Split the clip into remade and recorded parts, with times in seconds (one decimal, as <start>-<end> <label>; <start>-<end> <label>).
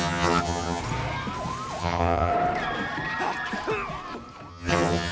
0.0-0.8 remade; 0.8-1.8 recorded; 1.8-2.3 remade; 2.3-4.5 recorded; 4.5-5.1 remade